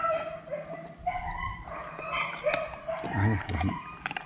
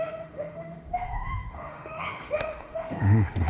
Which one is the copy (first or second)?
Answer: second